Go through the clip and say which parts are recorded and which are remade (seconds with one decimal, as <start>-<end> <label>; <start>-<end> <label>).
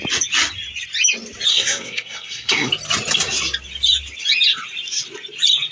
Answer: 0.0-1.5 recorded; 1.5-2.7 remade; 2.7-5.7 recorded